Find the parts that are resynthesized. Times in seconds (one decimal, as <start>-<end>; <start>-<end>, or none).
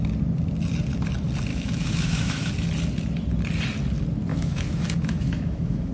1.5-2.5; 4.3-5.9